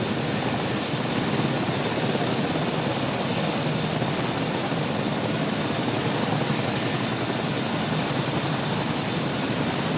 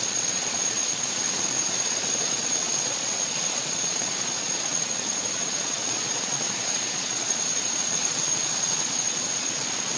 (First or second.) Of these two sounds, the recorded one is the first